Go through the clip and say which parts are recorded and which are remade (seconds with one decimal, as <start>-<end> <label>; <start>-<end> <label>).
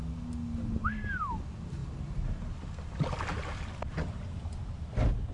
0.0-5.3 recorded